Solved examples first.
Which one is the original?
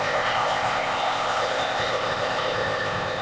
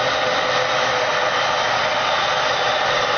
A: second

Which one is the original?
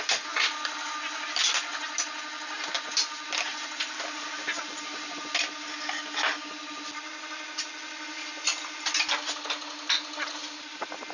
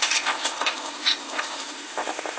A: first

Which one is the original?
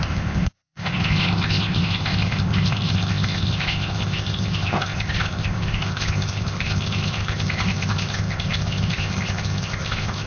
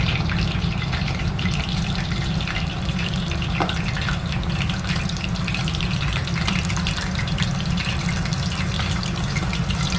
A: second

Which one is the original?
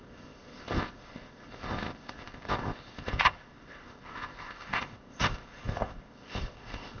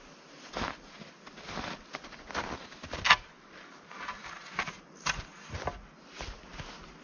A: second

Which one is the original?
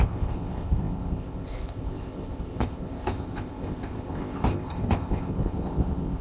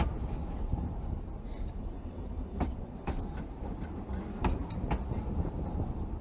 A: second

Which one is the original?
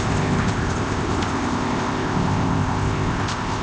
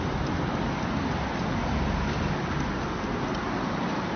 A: second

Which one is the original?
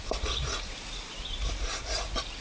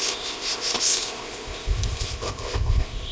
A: first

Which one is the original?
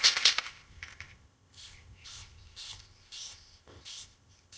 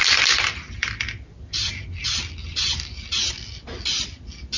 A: second